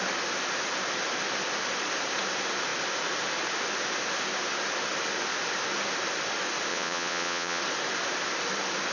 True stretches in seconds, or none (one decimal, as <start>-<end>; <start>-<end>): 0.0-6.7; 7.6-8.9